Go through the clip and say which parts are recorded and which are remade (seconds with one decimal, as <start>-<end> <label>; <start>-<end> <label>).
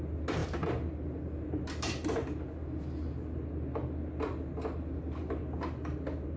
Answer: 0.0-6.4 recorded